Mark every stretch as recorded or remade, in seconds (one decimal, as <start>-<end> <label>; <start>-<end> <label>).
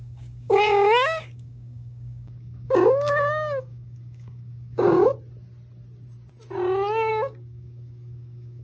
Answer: 0.0-5.1 remade; 5.1-7.1 recorded; 7.1-8.6 remade